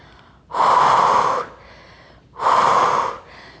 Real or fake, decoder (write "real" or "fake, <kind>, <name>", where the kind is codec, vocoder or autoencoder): real